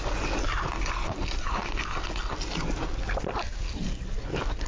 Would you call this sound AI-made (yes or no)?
no